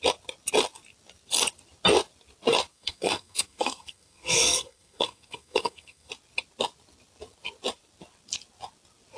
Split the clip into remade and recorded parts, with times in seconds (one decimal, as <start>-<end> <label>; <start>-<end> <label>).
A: 0.0-2.7 recorded; 2.7-6.1 remade; 6.1-9.2 recorded